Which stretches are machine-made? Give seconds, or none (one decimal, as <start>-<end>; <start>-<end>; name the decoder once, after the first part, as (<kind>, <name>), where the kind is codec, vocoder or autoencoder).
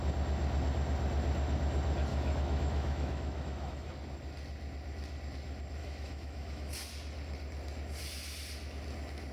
2.1-3.9 (autoencoder, DAC-VAE); 5.8-6.7